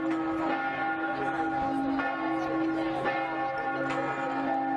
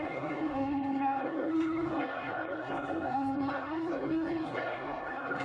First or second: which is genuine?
first